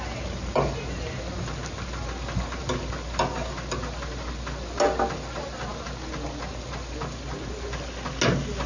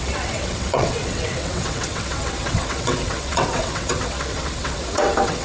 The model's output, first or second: second